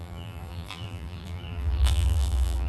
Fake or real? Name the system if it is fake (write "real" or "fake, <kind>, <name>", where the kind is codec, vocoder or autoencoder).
fake, vocoder, BigVGAN v2